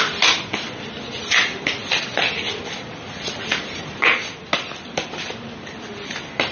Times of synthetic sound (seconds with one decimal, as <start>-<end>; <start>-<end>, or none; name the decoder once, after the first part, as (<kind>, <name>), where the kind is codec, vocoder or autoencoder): none